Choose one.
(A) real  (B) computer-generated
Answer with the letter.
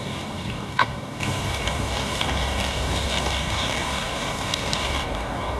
B